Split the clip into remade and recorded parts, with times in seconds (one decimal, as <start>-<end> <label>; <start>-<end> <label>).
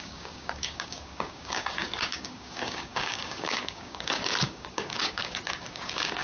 0.0-6.2 remade